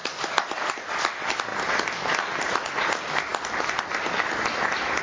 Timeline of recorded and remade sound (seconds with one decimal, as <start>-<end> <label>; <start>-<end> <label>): 0.0-5.0 recorded